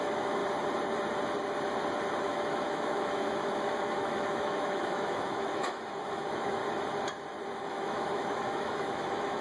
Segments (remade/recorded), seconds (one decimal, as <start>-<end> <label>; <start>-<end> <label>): 0.0-0.4 remade; 0.4-2.2 recorded; 2.2-6.6 remade; 6.6-7.7 recorded; 7.7-9.4 remade